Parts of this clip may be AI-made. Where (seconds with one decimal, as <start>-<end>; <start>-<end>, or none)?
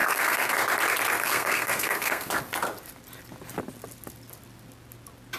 0.0-0.5; 1.2-2.4